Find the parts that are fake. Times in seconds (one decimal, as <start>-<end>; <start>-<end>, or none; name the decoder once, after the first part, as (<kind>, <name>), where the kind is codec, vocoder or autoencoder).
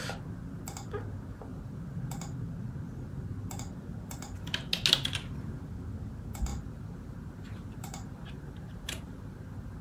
1.5-2.0 (vocoder, BigVGAN v2); 6.5-9.8